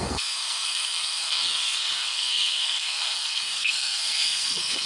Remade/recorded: remade